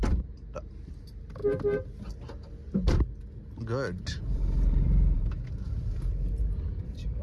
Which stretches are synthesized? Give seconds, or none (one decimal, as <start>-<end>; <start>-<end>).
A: 0.0-1.4; 4.2-7.2

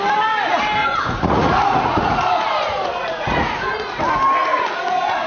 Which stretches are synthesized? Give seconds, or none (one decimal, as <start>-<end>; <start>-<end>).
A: 0.8-4.0; 4.4-5.3

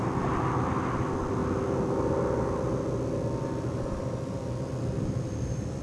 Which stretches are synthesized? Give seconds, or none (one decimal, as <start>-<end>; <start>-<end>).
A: 0.0-1.4; 3.4-5.8

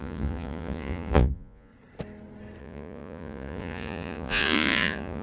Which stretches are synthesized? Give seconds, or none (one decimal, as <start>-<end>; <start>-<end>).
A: 0.0-1.7; 2.6-5.2

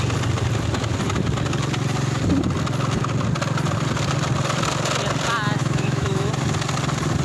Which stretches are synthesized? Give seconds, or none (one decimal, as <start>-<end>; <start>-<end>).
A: 5.6-6.3

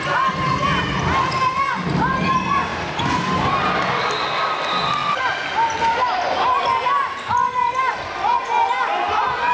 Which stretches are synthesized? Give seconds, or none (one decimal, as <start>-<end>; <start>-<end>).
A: 2.7-3.5